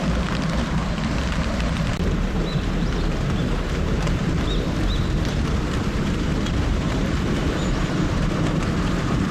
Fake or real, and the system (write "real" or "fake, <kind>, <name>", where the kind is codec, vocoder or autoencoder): fake, vocoder, BigVGAN v2